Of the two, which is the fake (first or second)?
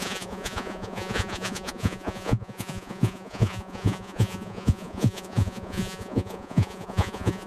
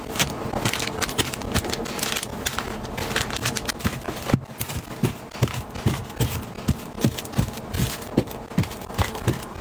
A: first